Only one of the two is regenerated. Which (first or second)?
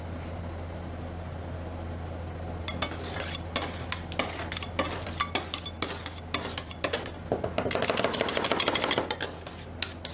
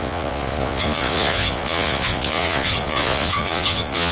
second